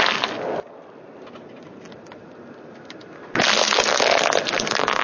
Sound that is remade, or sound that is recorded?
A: recorded